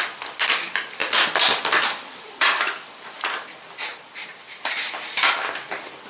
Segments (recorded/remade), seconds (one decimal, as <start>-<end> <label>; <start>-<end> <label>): 0.0-6.1 recorded